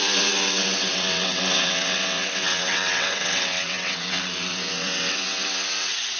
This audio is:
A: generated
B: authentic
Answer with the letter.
A